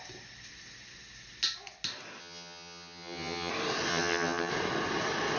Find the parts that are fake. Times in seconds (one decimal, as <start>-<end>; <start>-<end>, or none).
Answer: 2.2-3.5; 3.9-4.5